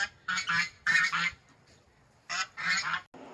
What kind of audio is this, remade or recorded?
recorded